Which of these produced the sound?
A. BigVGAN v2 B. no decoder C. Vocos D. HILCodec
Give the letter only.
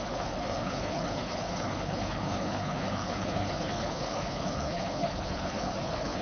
D